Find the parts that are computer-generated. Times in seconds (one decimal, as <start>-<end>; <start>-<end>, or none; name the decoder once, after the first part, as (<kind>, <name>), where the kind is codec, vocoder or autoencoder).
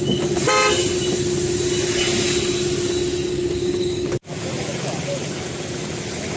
3.3-4.1 (codec, DAC)